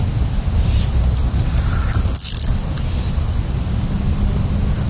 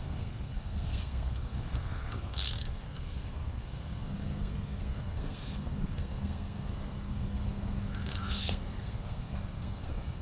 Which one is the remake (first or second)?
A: second